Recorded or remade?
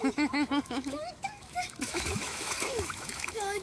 remade